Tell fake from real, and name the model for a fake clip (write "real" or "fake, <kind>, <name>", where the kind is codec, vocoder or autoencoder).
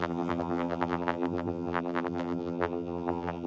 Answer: fake, vocoder, BigVGAN v2